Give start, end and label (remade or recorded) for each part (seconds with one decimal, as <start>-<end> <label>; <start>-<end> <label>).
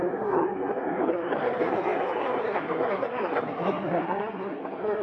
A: 0.0-5.0 remade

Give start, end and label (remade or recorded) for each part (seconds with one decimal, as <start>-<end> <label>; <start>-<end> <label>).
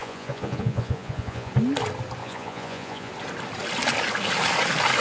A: 0.0-1.5 remade; 1.5-2.2 recorded; 2.2-3.1 remade; 3.1-5.0 recorded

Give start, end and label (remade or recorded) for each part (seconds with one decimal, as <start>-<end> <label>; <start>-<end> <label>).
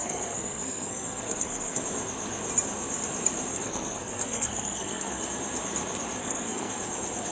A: 0.0-1.8 remade; 1.8-3.5 recorded; 3.5-5.2 remade; 5.2-6.2 recorded; 6.2-6.7 remade; 6.7-7.3 recorded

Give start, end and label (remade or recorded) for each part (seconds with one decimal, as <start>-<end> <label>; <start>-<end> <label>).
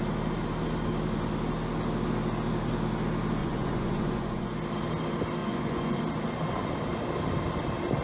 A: 0.0-3.4 recorded; 3.4-4.5 remade; 4.5-5.4 recorded; 5.4-6.0 remade; 6.0-8.0 recorded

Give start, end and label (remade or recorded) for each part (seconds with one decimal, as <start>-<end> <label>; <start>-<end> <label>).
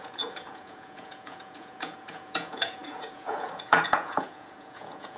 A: 0.0-5.2 remade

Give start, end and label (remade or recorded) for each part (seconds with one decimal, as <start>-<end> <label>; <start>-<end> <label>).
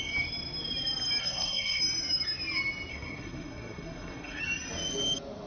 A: 0.0-1.2 recorded; 1.2-1.8 remade; 1.8-2.9 recorded; 2.9-4.4 remade; 4.4-5.5 recorded